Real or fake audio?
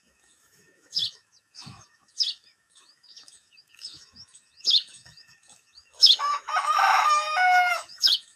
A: fake